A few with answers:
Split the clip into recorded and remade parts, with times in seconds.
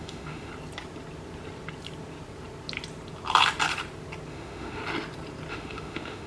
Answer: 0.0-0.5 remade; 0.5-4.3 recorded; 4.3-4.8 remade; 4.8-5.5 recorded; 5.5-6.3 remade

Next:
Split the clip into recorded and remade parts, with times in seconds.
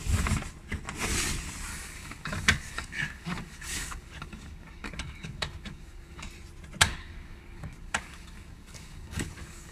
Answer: 0.0-1.7 recorded; 1.7-6.3 remade; 6.3-6.8 recorded; 6.8-9.7 remade